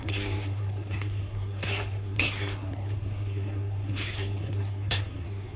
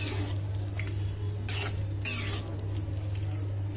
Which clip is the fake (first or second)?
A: first